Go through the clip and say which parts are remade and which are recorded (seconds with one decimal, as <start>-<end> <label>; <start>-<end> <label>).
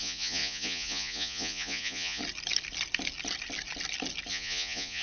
0.0-2.2 remade; 2.2-4.3 recorded; 4.3-5.0 remade